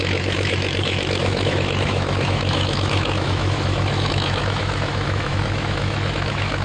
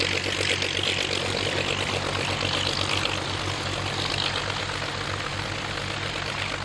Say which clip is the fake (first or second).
first